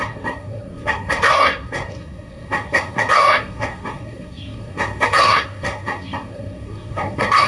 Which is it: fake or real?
fake